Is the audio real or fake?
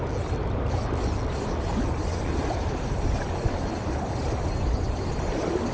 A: real